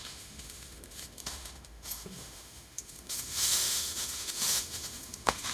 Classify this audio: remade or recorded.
remade